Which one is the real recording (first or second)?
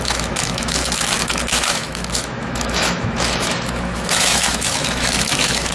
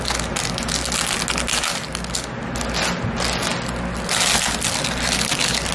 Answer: second